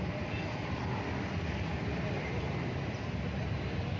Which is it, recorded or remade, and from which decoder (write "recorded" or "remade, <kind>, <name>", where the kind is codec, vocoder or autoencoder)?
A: recorded